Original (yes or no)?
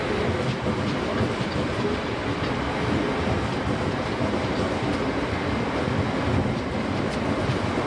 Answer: yes